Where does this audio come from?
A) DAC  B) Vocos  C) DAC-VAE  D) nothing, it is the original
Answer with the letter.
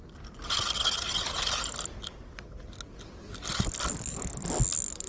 D